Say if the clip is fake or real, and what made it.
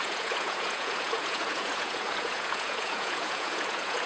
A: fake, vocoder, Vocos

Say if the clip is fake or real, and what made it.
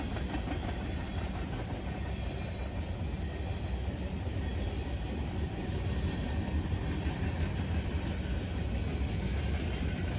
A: real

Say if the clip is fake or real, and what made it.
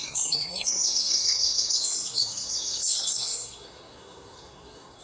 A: fake, codec, SNAC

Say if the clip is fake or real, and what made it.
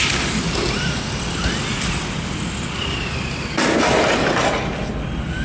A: real